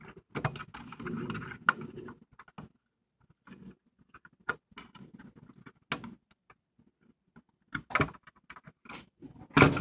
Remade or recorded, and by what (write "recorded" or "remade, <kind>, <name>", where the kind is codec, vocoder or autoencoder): recorded